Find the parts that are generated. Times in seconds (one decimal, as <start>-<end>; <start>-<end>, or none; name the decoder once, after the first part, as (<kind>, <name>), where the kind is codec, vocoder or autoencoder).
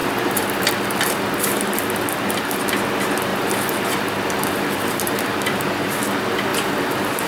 none